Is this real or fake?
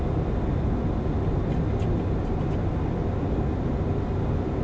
real